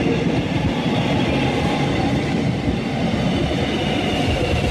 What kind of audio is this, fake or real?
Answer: real